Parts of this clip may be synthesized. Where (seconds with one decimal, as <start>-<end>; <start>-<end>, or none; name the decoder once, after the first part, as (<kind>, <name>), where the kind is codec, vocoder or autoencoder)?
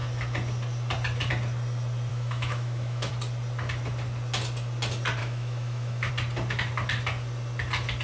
2.1-3.1 (autoencoder, DAC-VAE); 5.2-6.1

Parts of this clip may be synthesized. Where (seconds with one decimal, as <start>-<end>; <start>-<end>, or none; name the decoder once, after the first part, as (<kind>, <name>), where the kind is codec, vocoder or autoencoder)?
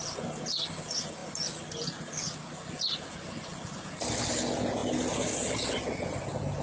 none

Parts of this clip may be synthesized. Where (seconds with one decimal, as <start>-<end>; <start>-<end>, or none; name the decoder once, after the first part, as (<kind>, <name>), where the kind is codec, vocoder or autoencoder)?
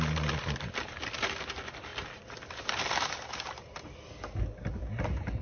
none